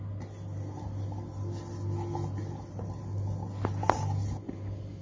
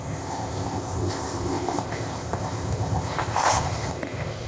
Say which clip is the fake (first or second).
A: second